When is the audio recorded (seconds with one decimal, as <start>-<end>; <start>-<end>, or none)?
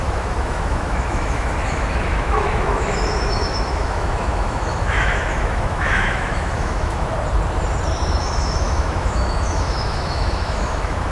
7.1-8.2